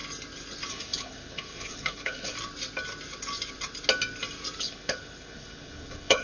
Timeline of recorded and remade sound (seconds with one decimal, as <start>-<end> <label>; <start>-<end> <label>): 0.0-0.7 recorded; 0.7-2.3 remade; 2.3-4.6 recorded; 4.6-6.2 remade